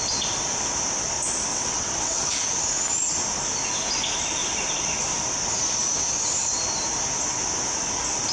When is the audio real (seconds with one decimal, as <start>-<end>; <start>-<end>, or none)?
0.0-1.5; 2.4-8.3